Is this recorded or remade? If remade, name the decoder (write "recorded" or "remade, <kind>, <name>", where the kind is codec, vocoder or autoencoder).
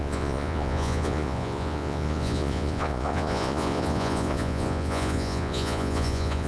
remade, vocoder, Vocos